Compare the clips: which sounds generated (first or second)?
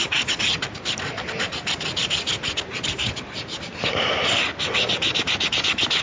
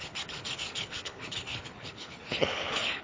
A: second